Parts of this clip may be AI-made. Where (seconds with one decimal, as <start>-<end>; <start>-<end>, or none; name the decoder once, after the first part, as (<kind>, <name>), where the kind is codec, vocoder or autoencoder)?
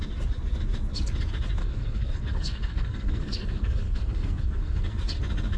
1.6-5.0 (codec, SNAC)